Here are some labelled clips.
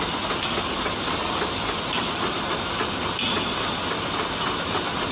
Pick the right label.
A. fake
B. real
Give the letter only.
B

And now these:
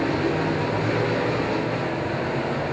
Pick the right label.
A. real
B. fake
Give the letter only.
A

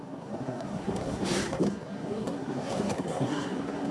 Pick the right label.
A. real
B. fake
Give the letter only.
B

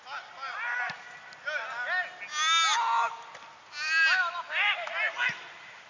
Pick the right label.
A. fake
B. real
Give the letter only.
B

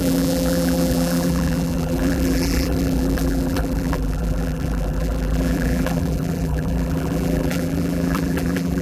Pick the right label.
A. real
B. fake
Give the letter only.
B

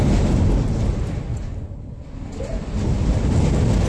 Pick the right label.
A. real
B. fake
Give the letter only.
A